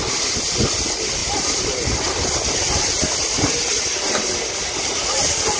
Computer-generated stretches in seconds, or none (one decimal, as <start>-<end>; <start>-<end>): 1.2-3.5